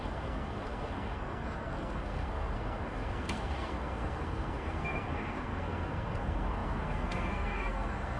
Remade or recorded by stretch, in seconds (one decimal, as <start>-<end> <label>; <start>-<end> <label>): 0.0-8.2 remade